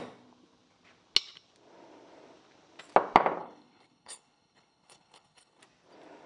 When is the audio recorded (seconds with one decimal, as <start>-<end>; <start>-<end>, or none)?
0.0-3.4; 5.6-6.3